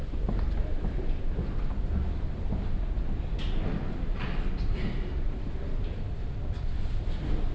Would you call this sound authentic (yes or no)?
yes